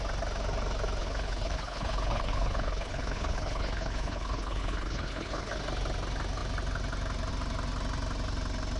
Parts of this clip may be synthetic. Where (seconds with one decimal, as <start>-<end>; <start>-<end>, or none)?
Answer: 1.0-5.6